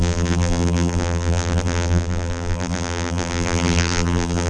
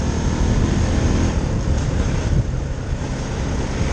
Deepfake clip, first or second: first